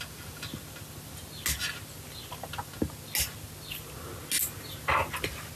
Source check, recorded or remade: recorded